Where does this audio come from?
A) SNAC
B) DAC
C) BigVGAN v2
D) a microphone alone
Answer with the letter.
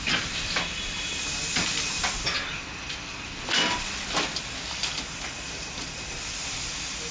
D